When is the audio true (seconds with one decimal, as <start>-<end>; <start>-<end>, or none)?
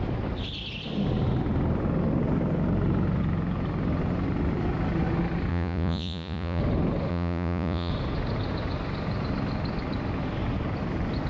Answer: 0.0-5.5; 6.6-7.1; 7.9-11.3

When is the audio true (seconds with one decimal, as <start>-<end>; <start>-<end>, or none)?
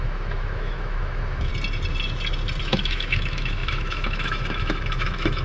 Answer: 1.5-2.6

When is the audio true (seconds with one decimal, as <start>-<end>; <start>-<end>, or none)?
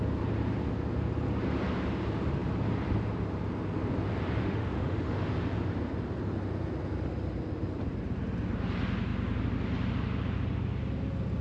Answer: 0.0-4.4; 5.3-11.4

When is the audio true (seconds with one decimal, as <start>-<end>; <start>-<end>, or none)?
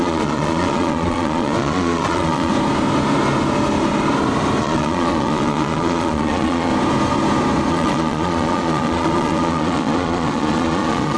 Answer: 2.5-4.6; 6.7-7.7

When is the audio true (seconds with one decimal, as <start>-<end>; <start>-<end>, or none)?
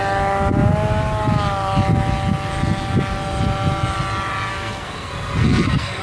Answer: 0.0-4.5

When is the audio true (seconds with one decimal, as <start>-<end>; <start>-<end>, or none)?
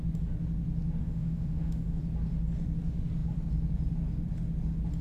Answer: 0.0-1.0; 2.0-5.0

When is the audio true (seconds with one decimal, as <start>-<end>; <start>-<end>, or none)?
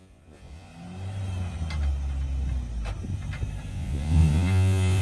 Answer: 0.7-3.7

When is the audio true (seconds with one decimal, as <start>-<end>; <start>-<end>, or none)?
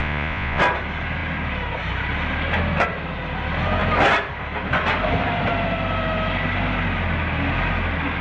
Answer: 0.6-8.2